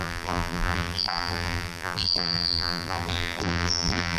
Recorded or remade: remade